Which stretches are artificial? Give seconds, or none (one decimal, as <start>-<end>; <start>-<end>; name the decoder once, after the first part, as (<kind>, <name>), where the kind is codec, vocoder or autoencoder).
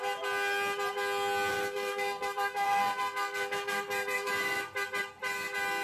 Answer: 1.5-4.3 (codec, SNAC)